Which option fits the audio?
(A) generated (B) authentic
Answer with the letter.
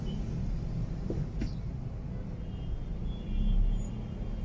B